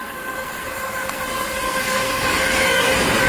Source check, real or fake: fake